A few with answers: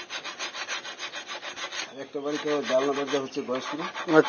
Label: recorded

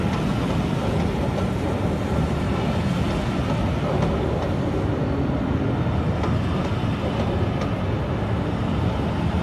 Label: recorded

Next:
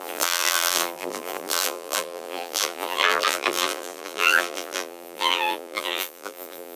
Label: remade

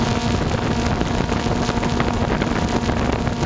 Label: recorded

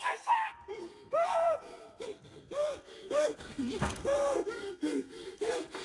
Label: remade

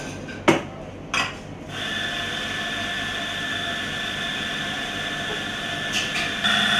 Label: recorded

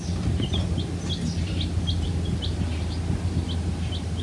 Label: recorded